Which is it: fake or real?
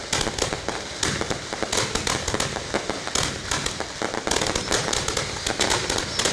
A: real